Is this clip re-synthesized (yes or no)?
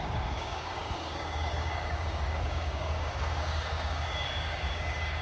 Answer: yes